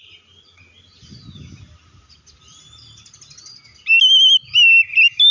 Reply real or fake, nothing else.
real